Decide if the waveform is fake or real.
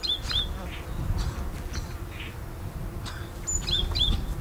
real